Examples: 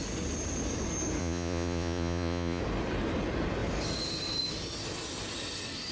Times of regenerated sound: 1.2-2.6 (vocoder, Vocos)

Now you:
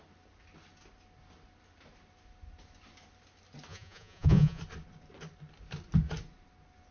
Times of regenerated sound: 3.7-4.6 (vocoder, Vocos)

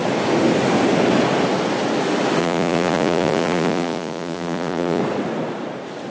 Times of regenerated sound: 2.4-5.0 (vocoder, Vocos)

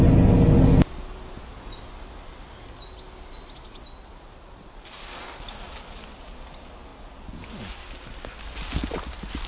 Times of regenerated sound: none

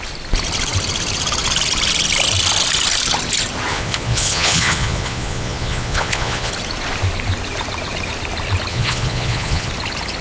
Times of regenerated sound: 3.7-6.5 (vocoder, Vocos); 8.7-9.7

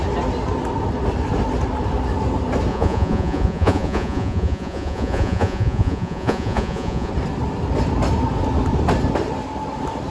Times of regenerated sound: 2.7-7.1 (vocoder, Vocos)

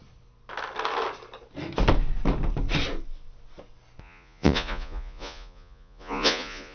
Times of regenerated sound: 4.0-6.7 (vocoder, Vocos)